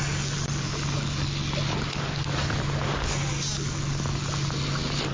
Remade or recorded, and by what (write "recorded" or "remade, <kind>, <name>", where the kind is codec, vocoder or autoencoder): recorded